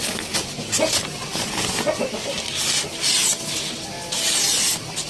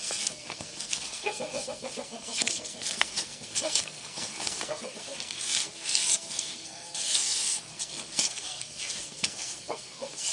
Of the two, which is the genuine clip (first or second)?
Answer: first